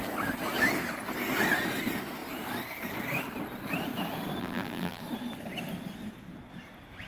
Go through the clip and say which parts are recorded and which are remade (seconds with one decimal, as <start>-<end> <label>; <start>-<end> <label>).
0.0-4.4 recorded; 4.4-5.0 remade; 5.0-7.1 recorded